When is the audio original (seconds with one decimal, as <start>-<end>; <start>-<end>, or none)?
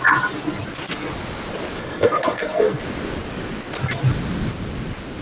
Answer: 0.0-1.8; 2.8-5.2